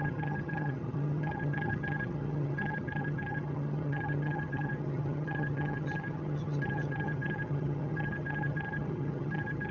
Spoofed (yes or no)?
yes